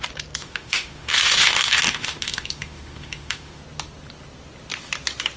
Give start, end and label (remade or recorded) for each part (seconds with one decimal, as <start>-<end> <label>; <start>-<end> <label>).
0.0-0.4 recorded; 0.4-3.6 remade; 3.6-5.4 recorded